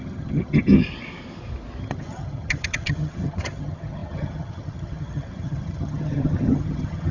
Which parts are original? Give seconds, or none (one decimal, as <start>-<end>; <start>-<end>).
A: 0.8-1.8